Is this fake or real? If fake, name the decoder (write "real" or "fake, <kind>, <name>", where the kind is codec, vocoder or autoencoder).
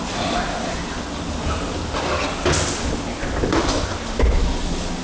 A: real